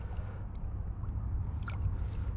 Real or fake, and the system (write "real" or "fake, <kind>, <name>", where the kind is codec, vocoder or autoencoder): real